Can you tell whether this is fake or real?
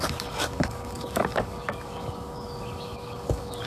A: fake